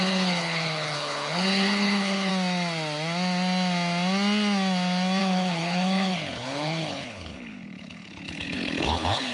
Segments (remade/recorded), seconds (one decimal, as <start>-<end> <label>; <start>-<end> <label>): 0.0-2.3 remade; 2.3-5.2 recorded; 5.2-9.3 remade